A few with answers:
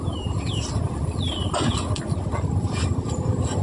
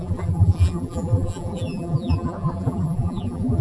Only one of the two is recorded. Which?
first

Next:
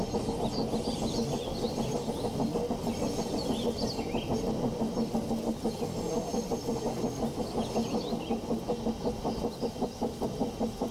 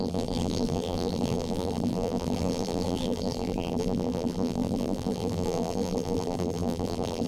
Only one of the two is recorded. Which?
first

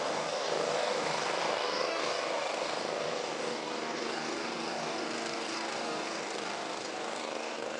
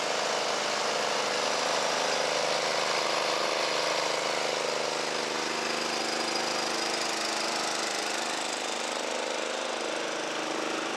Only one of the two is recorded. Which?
second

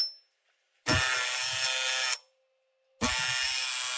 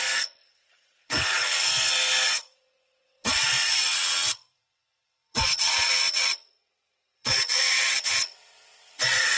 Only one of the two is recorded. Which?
first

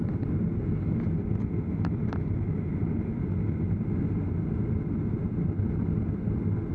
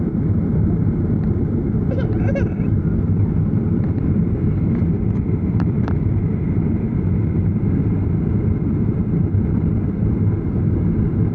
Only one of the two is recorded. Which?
first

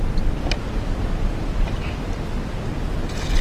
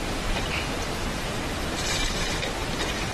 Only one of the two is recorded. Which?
first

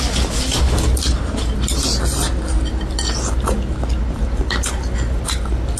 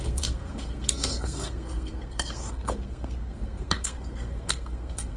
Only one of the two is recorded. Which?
first